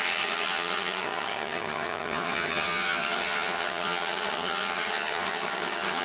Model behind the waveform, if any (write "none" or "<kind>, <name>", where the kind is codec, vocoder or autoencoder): vocoder, HiFi-GAN